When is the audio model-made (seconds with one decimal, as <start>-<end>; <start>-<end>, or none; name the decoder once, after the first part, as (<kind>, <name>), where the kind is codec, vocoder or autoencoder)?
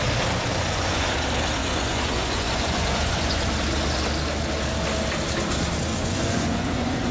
0.5-1.1 (vocoder, Vocos); 1.6-3.5; 5.9-7.1